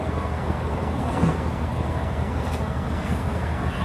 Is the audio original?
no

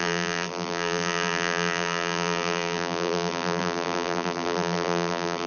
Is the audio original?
no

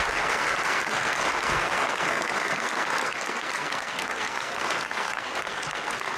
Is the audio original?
no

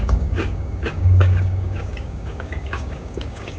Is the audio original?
no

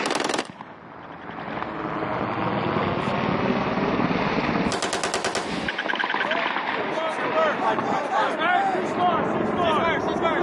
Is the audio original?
yes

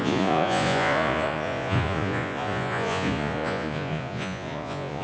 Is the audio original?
no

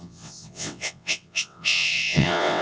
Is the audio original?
no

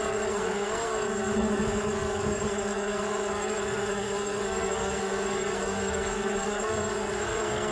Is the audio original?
no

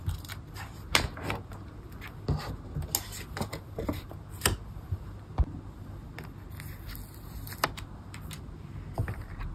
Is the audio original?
yes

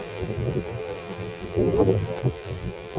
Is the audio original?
no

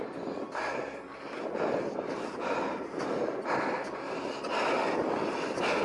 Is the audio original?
yes